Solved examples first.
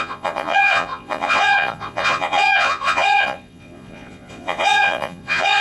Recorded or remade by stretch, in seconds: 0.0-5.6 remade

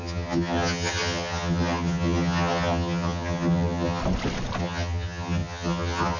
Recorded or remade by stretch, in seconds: 0.0-4.0 remade; 4.0-4.6 recorded; 4.6-6.2 remade

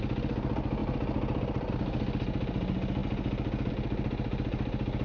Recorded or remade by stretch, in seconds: 0.0-5.0 recorded

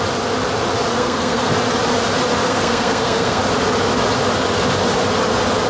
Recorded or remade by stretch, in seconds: 0.0-0.9 recorded; 0.9-1.5 remade; 1.5-2.4 recorded; 2.4-3.4 remade; 3.4-5.7 recorded

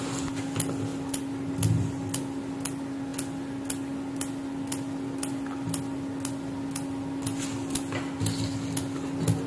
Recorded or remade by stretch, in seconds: 0.0-9.5 recorded

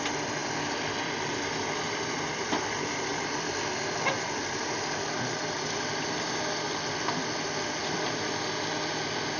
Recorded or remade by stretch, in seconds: 0.0-0.4 recorded; 0.4-2.5 remade; 2.5-3.1 recorded; 3.1-6.4 remade; 6.4-7.8 recorded; 7.8-8.4 remade; 8.4-9.4 recorded